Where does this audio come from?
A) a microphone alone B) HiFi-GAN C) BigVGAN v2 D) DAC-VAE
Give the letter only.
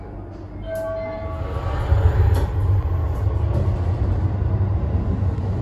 A